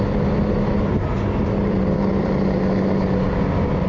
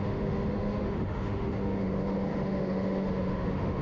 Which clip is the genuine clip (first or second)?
first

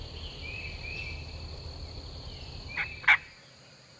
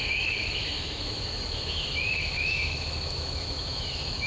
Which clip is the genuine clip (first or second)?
first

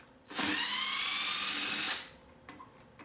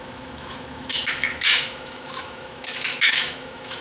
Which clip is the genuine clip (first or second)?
first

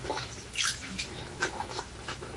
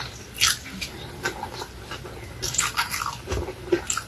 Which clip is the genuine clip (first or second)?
second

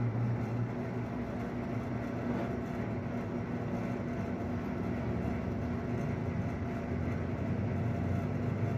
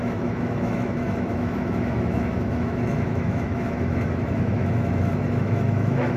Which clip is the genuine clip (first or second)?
first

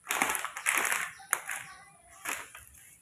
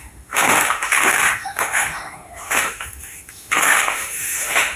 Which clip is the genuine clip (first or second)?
first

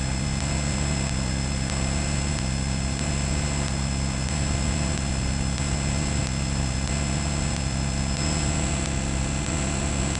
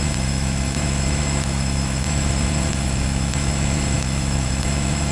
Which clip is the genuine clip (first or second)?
first